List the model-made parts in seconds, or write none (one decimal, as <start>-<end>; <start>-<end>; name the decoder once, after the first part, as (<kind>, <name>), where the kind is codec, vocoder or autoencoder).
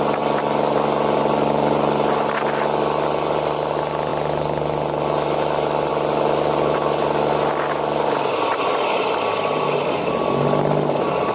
none